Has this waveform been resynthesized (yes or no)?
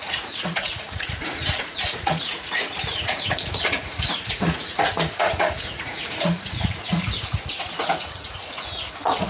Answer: yes